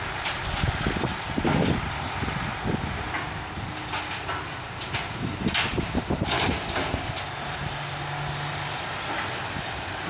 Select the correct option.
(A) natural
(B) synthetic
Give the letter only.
A